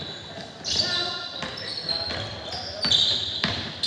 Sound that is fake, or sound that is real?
real